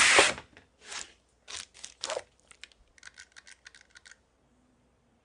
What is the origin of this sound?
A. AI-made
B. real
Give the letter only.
B